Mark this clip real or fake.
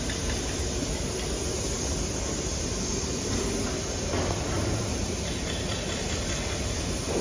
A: real